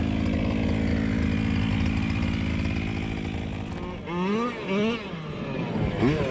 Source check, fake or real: real